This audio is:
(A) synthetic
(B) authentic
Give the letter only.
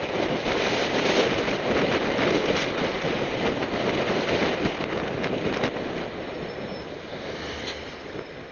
B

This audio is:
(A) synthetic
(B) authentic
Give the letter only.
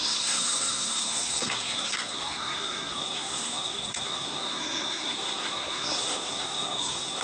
A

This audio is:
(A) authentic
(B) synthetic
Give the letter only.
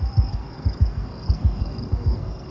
B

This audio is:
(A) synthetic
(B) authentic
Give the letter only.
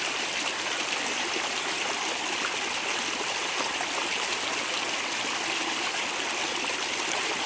B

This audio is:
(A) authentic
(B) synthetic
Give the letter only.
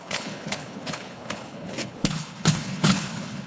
B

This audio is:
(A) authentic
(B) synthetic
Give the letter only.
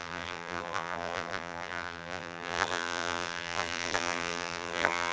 B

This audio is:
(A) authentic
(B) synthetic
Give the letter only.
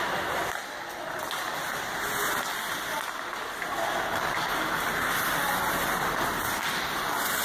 A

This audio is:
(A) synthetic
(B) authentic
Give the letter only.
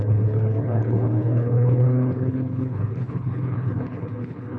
A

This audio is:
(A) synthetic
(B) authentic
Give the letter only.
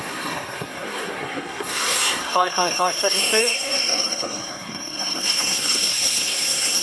A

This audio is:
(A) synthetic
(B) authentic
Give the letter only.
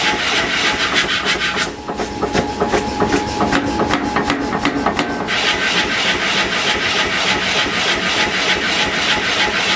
B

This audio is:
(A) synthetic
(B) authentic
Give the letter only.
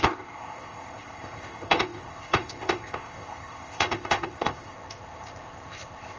A